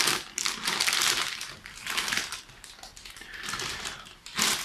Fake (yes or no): no